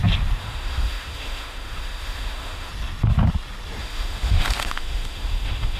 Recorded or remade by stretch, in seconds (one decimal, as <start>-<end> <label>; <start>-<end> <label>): 0.0-0.4 recorded; 0.4-2.7 remade; 2.7-3.8 recorded; 3.8-5.8 remade